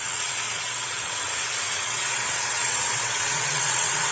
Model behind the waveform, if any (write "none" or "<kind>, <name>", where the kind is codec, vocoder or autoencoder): vocoder, WaveNeXt